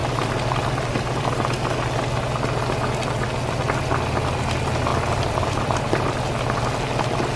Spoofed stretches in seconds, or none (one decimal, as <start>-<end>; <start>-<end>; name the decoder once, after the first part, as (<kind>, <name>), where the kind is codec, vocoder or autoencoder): 4.9-5.8 (vocoder, BigVGAN v2)